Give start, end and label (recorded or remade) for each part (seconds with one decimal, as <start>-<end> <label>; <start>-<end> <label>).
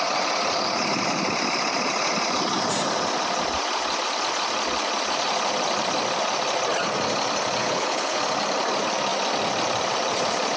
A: 0.0-7.6 recorded; 7.6-8.2 remade; 8.2-10.6 recorded